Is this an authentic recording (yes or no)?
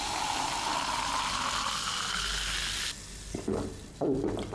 yes